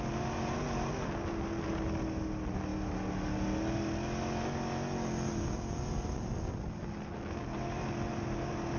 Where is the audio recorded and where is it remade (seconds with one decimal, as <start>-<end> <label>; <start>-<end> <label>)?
0.0-8.8 recorded